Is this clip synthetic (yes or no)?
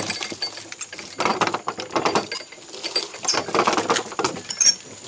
no